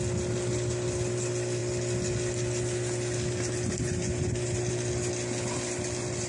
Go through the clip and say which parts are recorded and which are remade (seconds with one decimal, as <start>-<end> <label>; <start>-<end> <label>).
0.0-6.3 recorded